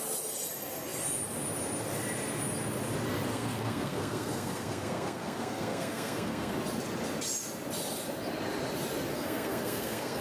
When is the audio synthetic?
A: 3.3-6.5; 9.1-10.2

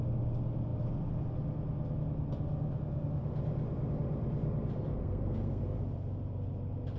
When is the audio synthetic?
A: 4.9-5.6

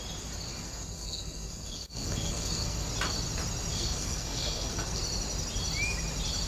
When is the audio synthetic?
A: 0.5-2.9; 3.7-5.0

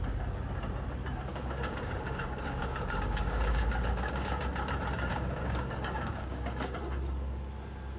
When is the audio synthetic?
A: 1.3-4.4; 5.1-6.8

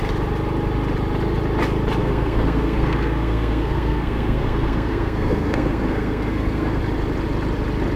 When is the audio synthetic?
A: 2.0-6.8